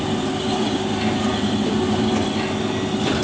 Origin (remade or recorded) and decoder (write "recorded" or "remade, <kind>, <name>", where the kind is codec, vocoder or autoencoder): recorded